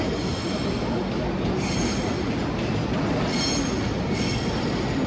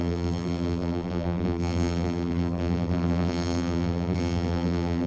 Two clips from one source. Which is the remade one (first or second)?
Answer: second